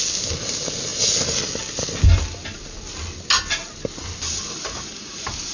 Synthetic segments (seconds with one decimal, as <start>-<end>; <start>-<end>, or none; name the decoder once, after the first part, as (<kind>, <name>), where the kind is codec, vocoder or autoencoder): none

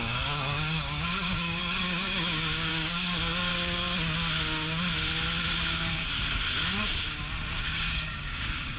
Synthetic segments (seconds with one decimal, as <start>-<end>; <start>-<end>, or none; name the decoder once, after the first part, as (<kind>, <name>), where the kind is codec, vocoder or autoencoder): 0.0-3.5 (codec, DAC); 7.6-8.8

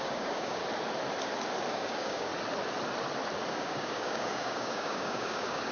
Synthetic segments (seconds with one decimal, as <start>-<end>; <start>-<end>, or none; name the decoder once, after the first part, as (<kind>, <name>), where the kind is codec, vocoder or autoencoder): 0.0-0.6 (codec, DAC); 1.7-2.3; 3.5-5.7

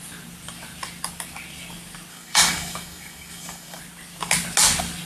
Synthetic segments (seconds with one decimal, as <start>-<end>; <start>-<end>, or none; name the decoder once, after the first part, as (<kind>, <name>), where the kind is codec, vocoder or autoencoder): 2.1-3.8 (codec, DAC)

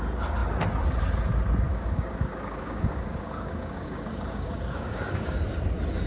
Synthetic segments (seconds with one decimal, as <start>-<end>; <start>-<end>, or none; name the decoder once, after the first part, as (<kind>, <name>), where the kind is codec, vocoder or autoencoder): 1.7-5.4 (codec, DAC)

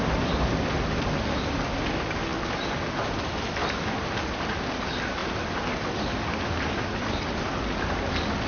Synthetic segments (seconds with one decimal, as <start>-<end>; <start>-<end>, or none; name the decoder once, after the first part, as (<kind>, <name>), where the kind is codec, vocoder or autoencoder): none